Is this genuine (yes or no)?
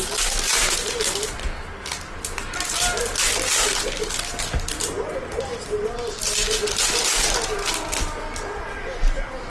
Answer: yes